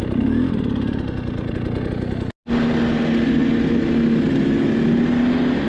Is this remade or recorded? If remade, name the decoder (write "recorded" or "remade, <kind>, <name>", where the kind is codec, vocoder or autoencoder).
recorded